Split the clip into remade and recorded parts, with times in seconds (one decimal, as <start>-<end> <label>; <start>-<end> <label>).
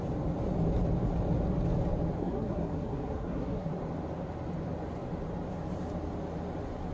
0.0-2.2 recorded; 2.2-3.7 remade; 3.7-6.9 recorded